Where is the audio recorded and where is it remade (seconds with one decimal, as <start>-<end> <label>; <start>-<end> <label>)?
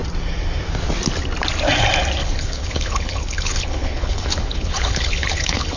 0.0-2.2 recorded; 2.2-5.8 remade